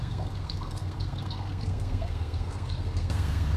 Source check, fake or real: fake